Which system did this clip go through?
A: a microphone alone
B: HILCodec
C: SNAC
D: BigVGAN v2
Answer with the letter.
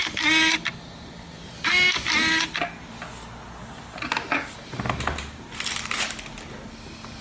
A